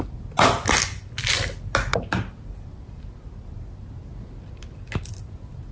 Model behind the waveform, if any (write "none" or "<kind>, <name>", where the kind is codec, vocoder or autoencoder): none